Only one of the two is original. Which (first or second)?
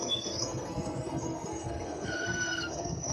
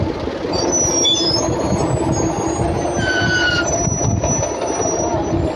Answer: second